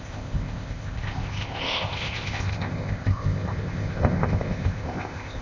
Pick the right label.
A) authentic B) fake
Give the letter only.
B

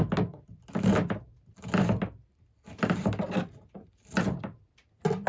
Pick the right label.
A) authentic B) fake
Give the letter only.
A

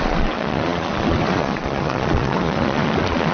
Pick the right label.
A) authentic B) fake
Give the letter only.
B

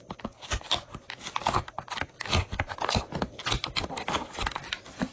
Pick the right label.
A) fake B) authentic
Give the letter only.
B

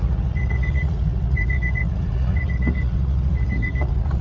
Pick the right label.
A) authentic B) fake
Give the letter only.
B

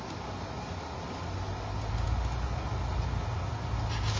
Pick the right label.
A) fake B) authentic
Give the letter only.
B